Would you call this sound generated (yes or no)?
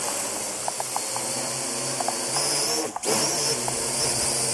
no